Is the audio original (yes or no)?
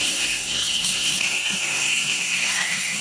no